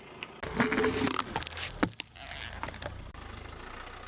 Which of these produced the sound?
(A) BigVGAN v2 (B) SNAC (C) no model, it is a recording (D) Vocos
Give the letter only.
C